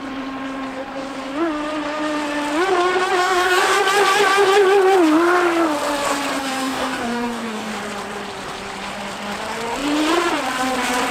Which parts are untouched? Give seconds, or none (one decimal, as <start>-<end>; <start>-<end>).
0.0-3.2; 3.8-6.4; 7.7-11.1